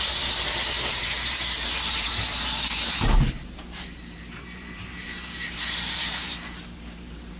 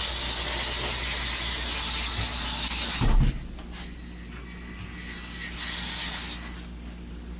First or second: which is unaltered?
second